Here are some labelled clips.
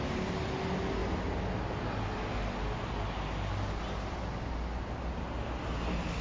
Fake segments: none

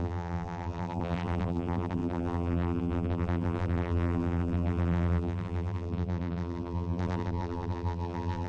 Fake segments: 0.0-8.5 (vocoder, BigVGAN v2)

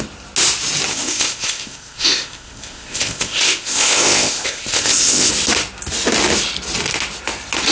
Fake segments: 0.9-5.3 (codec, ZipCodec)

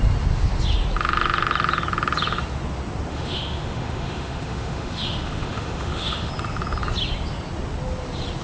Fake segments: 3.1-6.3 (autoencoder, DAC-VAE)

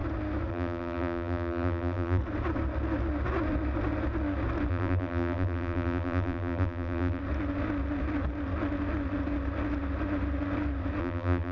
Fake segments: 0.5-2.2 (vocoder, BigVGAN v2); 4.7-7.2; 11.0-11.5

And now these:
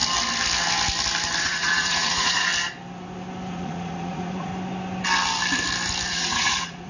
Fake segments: 1.4-2.5 (vocoder, Vocos); 3.5-4.5; 6.1-6.9

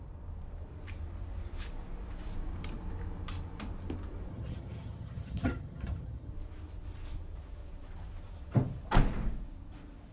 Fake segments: 4.3-6.3 (vocoder, HiFi-GAN)

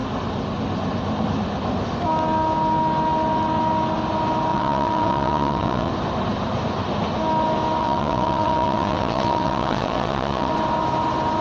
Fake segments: 4.5-5.9 (vocoder, WaveNeXt); 7.8-10.5